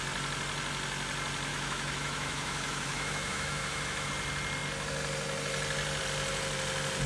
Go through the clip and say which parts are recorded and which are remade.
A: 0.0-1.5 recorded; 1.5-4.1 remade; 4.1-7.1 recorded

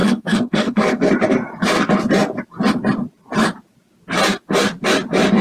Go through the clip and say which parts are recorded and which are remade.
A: 0.0-1.1 remade; 1.1-5.4 recorded

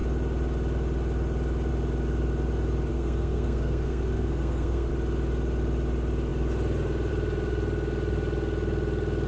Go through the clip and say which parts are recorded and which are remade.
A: 0.0-2.9 recorded; 2.9-4.9 remade; 4.9-9.3 recorded